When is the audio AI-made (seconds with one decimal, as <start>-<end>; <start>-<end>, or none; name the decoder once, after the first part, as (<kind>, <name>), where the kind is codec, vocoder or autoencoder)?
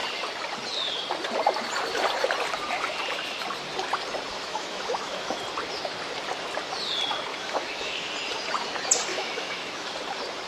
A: 4.3-5.4 (autoencoder, DAC-VAE); 7.3-8.1; 9.1-9.9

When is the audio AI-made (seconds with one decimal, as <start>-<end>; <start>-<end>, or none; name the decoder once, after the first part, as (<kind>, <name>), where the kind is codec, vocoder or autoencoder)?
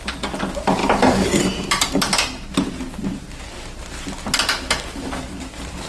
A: none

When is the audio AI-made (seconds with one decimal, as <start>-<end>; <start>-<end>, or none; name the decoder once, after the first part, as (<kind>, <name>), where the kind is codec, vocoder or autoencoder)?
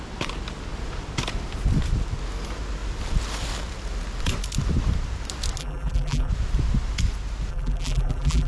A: 5.6-6.3 (vocoder, BigVGAN v2); 7.5-8.5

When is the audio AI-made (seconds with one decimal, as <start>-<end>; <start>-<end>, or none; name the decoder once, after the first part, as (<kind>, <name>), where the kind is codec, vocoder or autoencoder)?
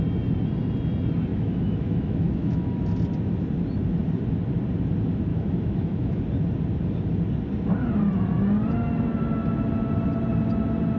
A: 1.3-2.8 (autoencoder, DAC-VAE); 5.3-6.2